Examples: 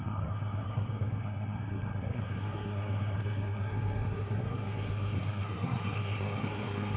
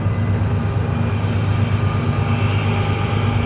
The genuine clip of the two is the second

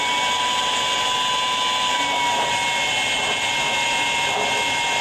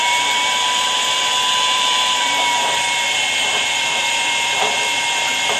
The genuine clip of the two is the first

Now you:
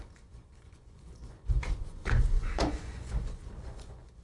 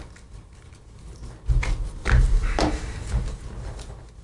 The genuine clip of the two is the second